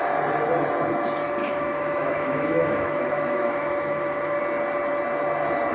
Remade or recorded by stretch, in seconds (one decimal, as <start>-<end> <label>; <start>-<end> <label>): 0.0-1.4 recorded; 1.4-4.4 remade; 4.4-5.7 recorded